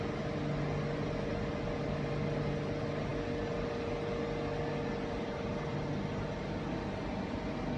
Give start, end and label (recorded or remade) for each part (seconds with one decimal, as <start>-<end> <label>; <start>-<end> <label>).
0.0-7.8 recorded